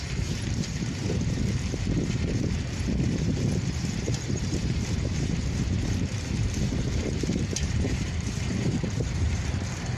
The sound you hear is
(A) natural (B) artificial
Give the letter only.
B